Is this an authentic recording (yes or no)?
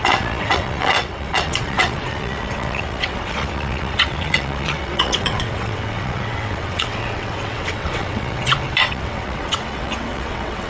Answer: no